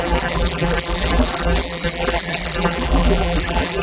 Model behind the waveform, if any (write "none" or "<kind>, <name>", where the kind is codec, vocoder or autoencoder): vocoder, BigVGAN v2